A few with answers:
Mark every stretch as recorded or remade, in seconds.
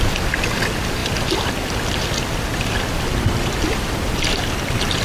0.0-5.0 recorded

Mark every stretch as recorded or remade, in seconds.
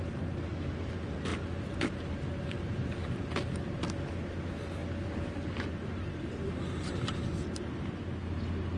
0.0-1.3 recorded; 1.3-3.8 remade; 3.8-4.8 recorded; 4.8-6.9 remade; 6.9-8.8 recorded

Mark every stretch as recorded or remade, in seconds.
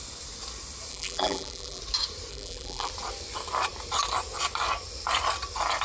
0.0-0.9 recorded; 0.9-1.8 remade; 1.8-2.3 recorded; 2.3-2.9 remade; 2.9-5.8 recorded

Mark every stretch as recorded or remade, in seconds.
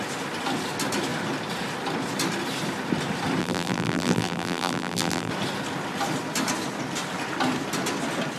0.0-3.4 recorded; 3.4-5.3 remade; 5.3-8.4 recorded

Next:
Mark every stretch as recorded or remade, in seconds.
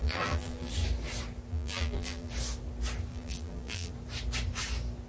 0.0-0.7 remade; 0.7-1.5 recorded; 1.5-2.3 remade; 2.3-3.1 recorded; 3.1-3.9 remade; 3.9-5.1 recorded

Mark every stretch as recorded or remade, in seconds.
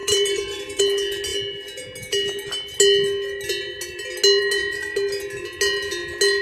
0.0-0.8 remade; 0.8-6.4 recorded